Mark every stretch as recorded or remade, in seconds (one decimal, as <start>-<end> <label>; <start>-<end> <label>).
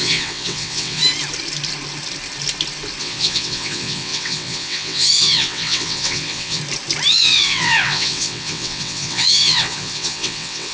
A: 0.0-1.0 remade; 1.0-3.0 recorded; 3.0-6.6 remade; 6.6-7.1 recorded; 7.1-10.7 remade